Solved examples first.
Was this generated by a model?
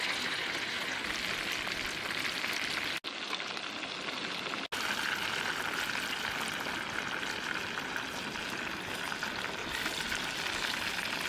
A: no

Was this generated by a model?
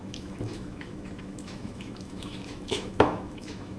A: yes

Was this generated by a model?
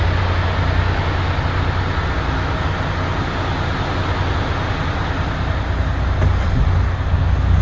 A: no